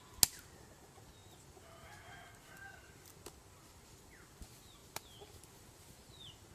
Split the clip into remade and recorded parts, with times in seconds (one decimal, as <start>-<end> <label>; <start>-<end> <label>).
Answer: 0.0-6.5 recorded